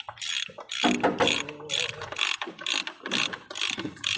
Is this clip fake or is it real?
real